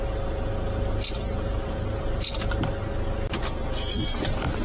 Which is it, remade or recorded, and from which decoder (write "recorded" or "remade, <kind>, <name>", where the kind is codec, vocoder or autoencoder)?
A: recorded